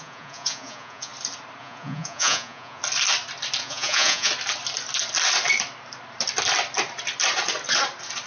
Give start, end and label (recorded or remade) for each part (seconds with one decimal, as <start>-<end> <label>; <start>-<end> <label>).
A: 0.0-1.1 remade; 1.1-1.6 recorded; 1.6-2.8 remade; 2.8-3.6 recorded; 3.6-4.3 remade; 4.3-8.3 recorded